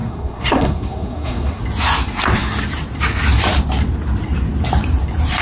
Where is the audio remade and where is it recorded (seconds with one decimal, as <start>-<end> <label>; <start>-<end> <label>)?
0.0-1.6 remade; 1.6-5.4 recorded

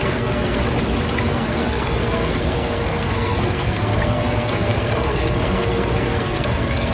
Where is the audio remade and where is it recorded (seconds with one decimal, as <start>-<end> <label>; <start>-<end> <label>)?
0.0-0.6 remade; 0.6-1.3 recorded; 1.3-6.9 remade

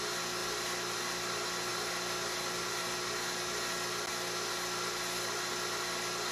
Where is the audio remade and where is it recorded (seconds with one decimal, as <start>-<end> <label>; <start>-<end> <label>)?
0.0-6.3 recorded

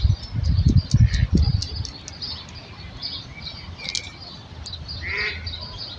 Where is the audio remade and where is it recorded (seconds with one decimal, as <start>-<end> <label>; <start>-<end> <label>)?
0.0-6.0 recorded

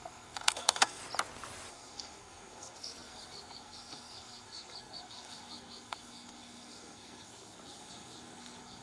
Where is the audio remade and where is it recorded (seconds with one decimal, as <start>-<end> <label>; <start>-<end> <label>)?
0.0-1.0 remade; 1.0-1.7 recorded; 1.7-8.8 remade

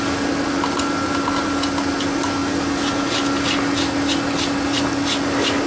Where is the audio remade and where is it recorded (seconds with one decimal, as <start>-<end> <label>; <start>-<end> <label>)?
0.0-5.7 recorded

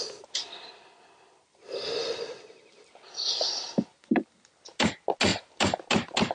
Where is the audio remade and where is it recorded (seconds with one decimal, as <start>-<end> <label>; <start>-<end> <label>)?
0.0-6.3 recorded